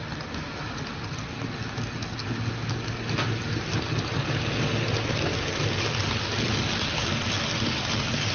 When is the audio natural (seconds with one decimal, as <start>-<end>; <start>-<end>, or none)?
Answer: 0.0-8.3